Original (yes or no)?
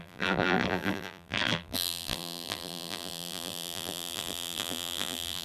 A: no